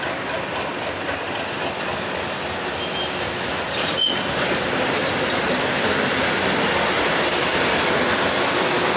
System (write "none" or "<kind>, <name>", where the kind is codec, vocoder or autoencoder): none